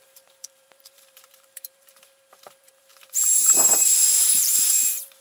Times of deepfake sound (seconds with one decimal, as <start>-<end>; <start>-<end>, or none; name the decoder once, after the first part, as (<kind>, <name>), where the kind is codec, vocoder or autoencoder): 0.0-5.2 (vocoder, BigVGAN v2)